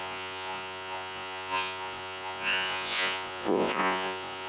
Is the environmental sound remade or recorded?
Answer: remade